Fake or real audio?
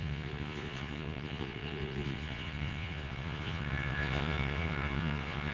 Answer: fake